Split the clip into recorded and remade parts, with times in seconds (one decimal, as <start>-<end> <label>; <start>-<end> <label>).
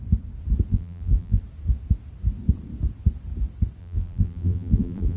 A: 0.0-0.7 recorded; 0.7-1.4 remade; 1.4-3.8 recorded; 3.8-5.2 remade